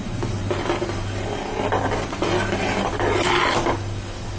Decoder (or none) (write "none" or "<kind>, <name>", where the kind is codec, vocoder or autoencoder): none